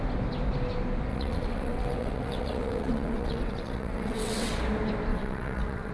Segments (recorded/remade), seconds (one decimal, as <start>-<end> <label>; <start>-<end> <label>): 0.0-1.1 recorded; 1.1-4.6 remade; 4.6-5.1 recorded; 5.1-5.9 remade